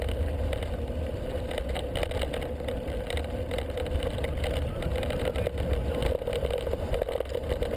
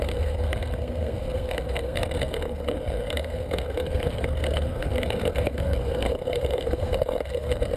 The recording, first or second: first